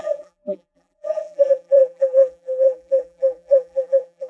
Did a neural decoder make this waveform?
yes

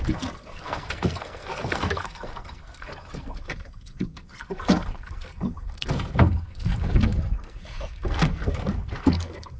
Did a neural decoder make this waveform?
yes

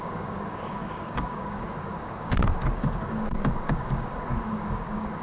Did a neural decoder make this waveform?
yes